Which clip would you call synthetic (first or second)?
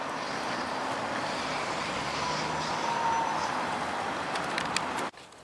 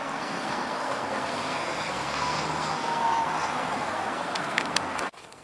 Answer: second